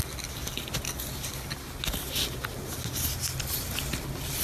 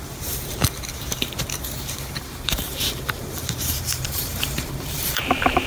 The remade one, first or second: second